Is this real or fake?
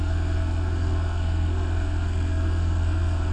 fake